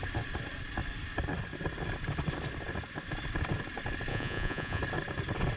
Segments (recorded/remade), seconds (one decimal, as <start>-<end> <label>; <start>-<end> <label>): 0.0-4.1 recorded; 4.1-4.8 remade; 4.8-5.6 recorded